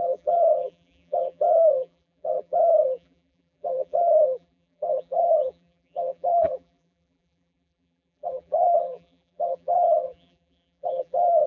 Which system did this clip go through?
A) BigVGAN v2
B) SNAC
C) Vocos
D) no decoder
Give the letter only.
A